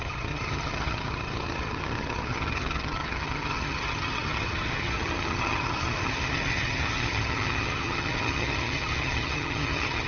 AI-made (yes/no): yes